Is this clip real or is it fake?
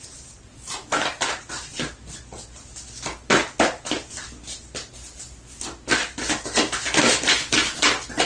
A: real